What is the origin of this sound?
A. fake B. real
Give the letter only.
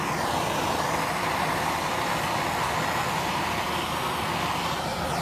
B